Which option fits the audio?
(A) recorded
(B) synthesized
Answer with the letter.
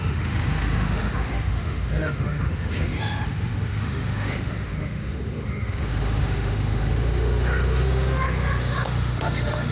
B